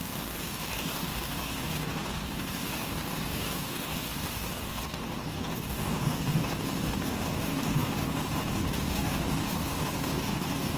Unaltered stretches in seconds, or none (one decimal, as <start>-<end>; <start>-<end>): none